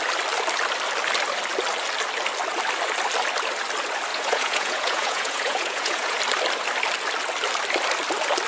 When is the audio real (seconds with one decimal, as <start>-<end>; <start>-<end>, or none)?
0.0-4.1; 6.2-8.5